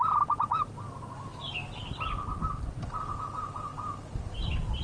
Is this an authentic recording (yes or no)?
yes